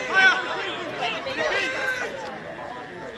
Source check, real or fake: real